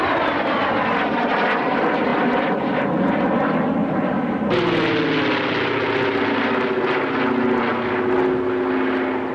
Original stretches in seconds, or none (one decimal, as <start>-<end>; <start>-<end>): 0.0-9.3

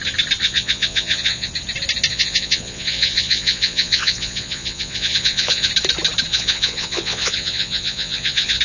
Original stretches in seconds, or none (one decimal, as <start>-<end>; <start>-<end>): 0.0-0.4; 1.5-2.1; 5.7-6.3

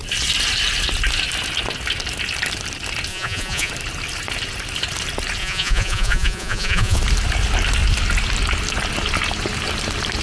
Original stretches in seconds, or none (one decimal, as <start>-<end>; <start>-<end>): 0.0-3.1; 3.7-5.4; 7.0-10.2

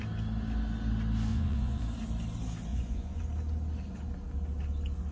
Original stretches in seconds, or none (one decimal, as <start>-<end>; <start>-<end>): 0.0-1.3; 1.8-2.7; 3.2-5.1

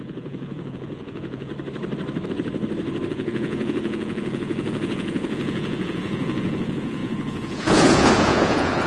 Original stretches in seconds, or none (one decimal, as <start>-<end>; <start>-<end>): 1.5-3.1

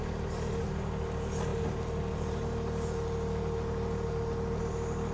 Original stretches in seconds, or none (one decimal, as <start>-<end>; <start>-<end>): 0.0-5.1

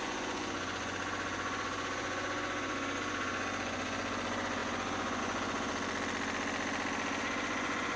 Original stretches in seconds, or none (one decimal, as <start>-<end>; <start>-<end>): 5.7-7.2

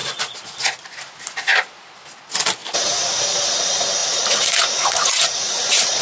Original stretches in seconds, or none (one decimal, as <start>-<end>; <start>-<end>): 0.0-4.0